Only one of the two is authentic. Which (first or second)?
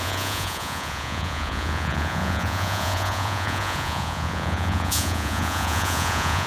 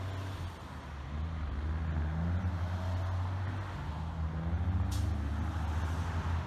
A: second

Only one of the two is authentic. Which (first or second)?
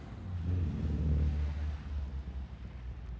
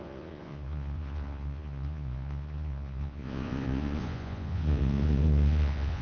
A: first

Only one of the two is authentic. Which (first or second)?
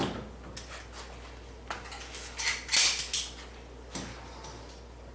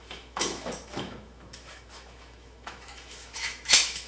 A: first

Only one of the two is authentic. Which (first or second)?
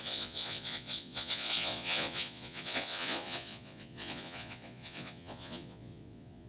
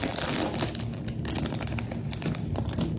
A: second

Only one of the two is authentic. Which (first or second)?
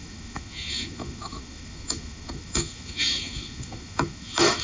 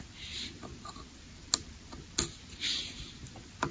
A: second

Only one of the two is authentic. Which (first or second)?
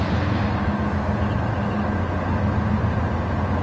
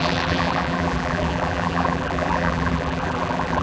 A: first